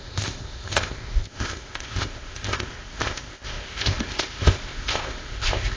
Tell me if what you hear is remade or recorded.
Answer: remade